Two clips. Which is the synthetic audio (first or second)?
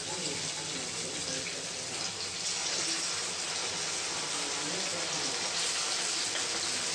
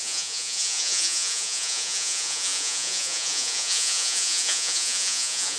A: second